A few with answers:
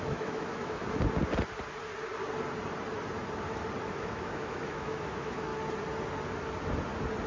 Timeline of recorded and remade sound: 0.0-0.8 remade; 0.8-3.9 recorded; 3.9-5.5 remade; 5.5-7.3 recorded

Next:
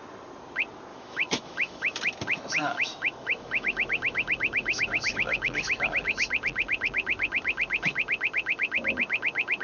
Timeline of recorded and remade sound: 0.0-0.9 recorded; 0.9-2.0 remade; 2.0-2.6 recorded; 2.6-6.0 remade; 6.0-9.6 recorded

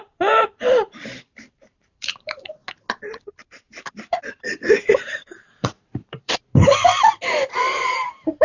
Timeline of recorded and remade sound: 0.0-2.6 remade; 2.6-3.8 recorded; 3.8-8.4 remade

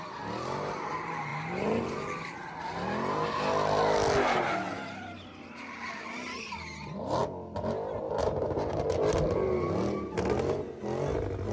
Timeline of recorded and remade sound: 0.0-11.5 recorded

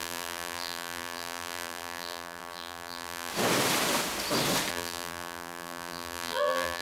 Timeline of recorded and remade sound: 0.0-3.3 remade; 3.3-4.7 recorded; 4.7-6.8 remade

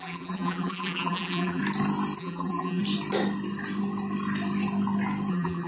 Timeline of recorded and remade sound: 0.0-1.6 remade; 1.6-2.2 recorded; 2.2-2.8 remade; 2.8-5.3 recorded; 5.3-5.7 remade